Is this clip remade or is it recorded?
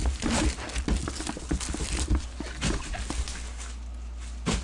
recorded